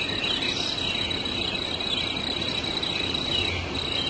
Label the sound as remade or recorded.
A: recorded